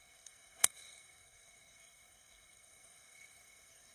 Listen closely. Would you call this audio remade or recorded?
remade